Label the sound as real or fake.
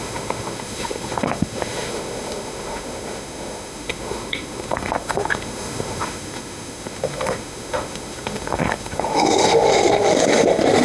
fake